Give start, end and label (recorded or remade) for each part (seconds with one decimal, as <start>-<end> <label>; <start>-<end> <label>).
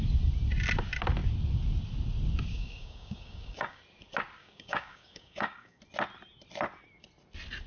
0.0-2.5 recorded; 2.5-3.8 remade; 3.8-4.4 recorded; 4.4-5.8 remade; 5.8-7.7 recorded